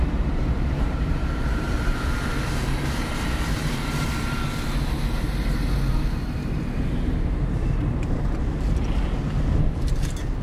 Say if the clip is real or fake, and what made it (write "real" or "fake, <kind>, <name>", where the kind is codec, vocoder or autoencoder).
fake, vocoder, BigVGAN v2